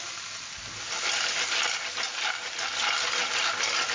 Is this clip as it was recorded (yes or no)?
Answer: yes